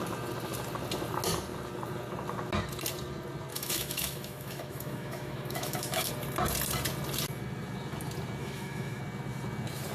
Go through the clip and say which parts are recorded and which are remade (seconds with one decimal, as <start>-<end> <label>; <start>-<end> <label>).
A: 0.0-3.5 recorded; 3.5-6.1 remade; 6.1-8.4 recorded; 8.4-9.0 remade; 9.0-9.9 recorded